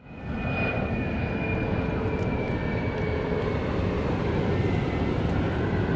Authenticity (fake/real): real